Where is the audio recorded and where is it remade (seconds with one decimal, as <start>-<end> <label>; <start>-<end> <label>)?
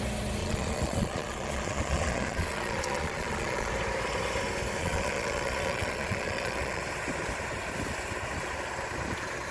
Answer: 0.0-0.4 recorded; 0.4-3.7 remade; 3.7-4.8 recorded; 4.8-6.8 remade; 6.8-9.5 recorded